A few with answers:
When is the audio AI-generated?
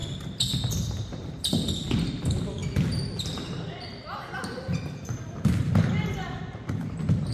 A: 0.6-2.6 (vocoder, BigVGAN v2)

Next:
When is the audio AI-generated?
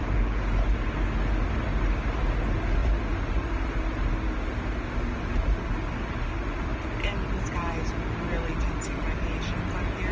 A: none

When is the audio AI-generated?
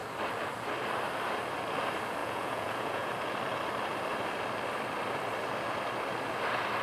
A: 2.2-3.1 (vocoder, Vocos)